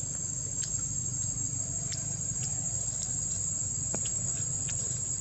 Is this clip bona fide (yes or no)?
yes